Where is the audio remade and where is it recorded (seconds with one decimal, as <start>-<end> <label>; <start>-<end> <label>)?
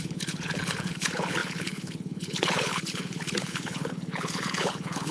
0.0-5.1 remade